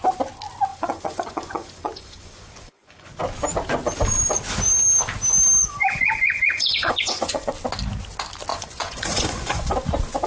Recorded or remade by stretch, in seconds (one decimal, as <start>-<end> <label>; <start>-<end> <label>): 0.0-0.7 recorded; 0.7-3.2 remade; 3.2-5.6 recorded; 5.6-7.5 remade; 7.5-8.5 recorded; 8.5-9.7 remade; 9.7-10.3 recorded

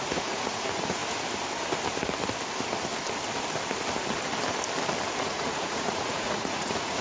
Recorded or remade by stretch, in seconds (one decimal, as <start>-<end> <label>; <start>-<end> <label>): 0.0-1.0 remade; 1.0-5.2 recorded; 5.2-7.0 remade

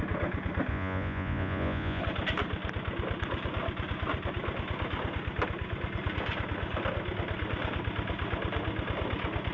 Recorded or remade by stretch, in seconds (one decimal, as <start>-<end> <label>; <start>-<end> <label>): 0.0-0.7 recorded; 0.7-2.0 remade; 2.0-9.5 recorded

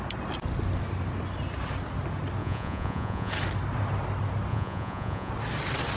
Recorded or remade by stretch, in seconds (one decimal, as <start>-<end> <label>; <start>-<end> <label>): 0.0-2.4 recorded; 2.4-3.3 remade; 3.3-4.5 recorded; 4.5-5.3 remade; 5.3-6.0 recorded

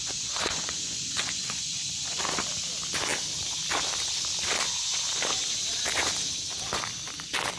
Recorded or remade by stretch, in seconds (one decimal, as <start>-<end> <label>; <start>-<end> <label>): 0.0-2.2 remade; 2.2-7.6 recorded

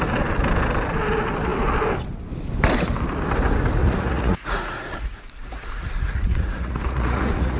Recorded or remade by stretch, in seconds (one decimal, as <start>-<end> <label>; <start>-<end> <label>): 0.0-3.8 recorded; 3.8-7.6 remade

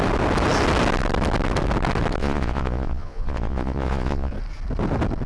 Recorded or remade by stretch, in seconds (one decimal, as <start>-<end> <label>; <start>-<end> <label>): 0.0-2.2 recorded; 2.2-4.3 remade; 4.3-5.3 recorded